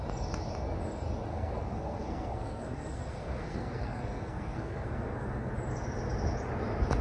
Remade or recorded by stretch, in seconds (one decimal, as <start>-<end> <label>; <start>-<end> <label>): 0.0-1.3 recorded; 1.3-5.5 remade; 5.5-7.0 recorded